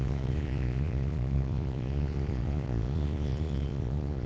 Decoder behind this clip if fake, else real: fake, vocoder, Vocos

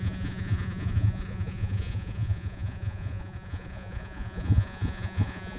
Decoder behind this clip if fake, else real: fake, vocoder, Vocos